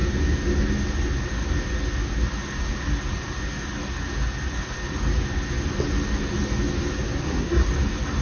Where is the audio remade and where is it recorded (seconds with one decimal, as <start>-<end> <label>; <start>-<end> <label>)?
0.0-7.2 recorded; 7.2-7.7 remade; 7.7-8.2 recorded